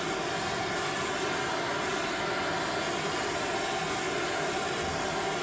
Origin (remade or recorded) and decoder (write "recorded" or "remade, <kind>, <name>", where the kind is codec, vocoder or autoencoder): recorded